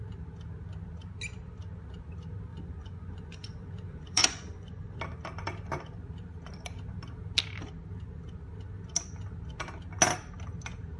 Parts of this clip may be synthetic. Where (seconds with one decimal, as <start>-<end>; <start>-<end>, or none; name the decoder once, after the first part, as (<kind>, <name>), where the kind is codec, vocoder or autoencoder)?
2.5-5.0 (vocoder, Vocos)